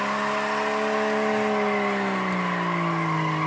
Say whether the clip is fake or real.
real